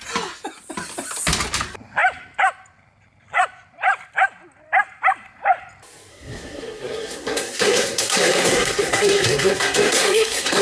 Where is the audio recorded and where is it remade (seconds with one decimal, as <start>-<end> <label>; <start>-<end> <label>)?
0.0-6.1 recorded; 6.1-10.6 remade